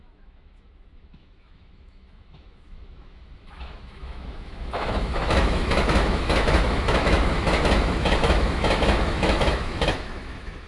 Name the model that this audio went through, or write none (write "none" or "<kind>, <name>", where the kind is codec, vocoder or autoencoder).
autoencoder, DAC-VAE